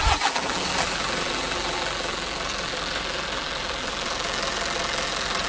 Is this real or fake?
fake